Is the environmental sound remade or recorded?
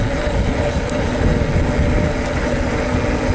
recorded